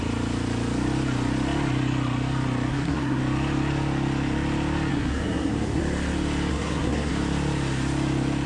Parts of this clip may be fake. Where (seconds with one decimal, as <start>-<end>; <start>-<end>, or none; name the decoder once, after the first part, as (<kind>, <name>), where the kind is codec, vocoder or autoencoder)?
2.7-3.2 (codec, SNAC); 4.9-5.8; 6.5-7.1